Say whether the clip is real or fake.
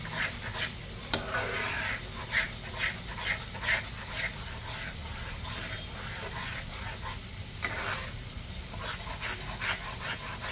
real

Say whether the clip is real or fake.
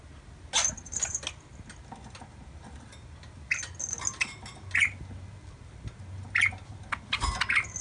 real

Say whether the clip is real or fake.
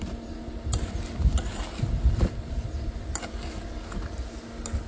real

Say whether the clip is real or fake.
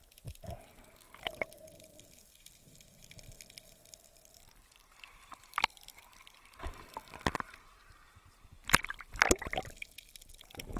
real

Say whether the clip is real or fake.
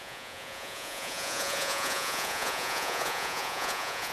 fake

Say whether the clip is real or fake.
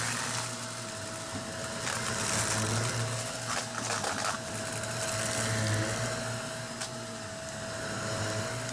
real